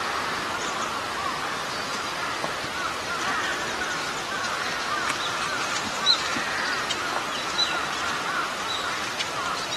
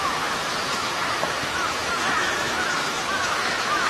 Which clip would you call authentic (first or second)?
first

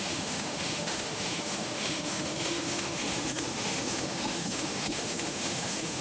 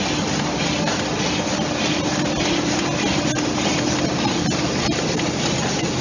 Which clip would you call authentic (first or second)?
second